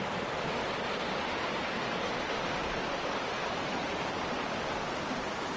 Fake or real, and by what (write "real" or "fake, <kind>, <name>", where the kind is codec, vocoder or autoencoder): real